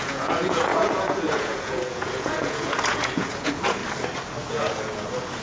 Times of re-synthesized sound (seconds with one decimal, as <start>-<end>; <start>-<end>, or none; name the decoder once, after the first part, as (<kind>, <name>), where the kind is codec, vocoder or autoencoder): 0.0-3.8 (vocoder, Vocos); 4.5-5.4